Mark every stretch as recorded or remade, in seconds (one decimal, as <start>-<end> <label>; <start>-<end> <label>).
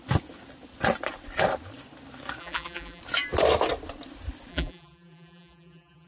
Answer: 0.0-2.4 recorded; 2.4-3.0 remade; 3.0-4.5 recorded; 4.5-6.1 remade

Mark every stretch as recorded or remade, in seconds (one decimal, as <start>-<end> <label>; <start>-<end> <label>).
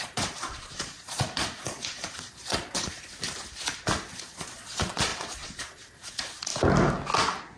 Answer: 0.0-3.1 remade; 3.1-4.1 recorded; 4.1-6.5 remade; 6.5-7.6 recorded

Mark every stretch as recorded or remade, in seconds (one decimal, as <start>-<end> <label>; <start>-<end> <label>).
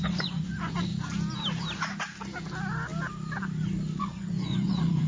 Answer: 0.0-0.9 remade; 0.9-4.0 recorded; 4.0-5.1 remade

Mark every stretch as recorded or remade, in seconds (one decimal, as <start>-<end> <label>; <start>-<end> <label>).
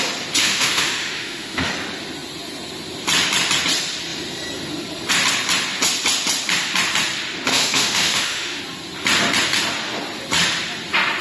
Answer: 0.0-0.4 recorded; 0.4-1.7 remade; 1.7-7.5 recorded; 7.5-8.6 remade; 8.6-11.2 recorded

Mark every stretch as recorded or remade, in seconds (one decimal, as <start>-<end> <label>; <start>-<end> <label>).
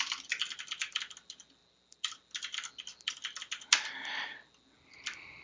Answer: 0.0-5.4 recorded